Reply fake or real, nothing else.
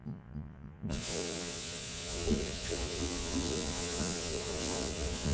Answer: fake